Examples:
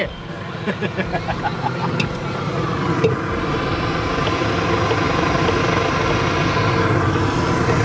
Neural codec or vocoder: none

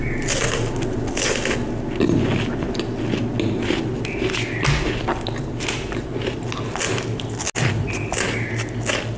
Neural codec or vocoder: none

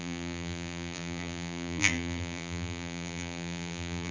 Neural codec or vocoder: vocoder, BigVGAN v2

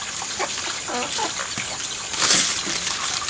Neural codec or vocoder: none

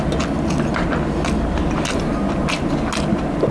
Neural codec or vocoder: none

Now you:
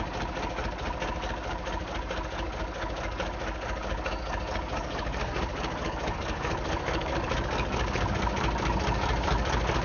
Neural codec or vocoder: codec, DAC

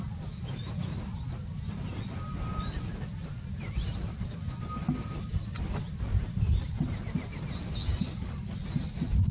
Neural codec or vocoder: none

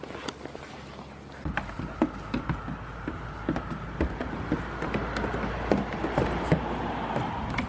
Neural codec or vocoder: none